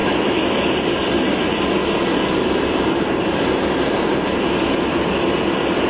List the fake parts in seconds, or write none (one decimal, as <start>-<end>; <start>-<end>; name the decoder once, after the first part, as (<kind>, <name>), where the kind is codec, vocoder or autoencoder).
0.0-0.7 (autoencoder, DAC-VAE)